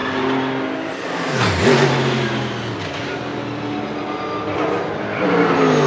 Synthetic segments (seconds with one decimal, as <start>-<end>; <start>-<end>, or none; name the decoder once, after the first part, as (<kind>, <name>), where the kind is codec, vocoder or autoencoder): none